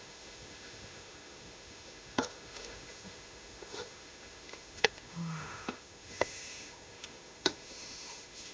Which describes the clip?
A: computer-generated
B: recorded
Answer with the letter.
A